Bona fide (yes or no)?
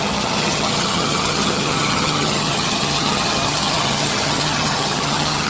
no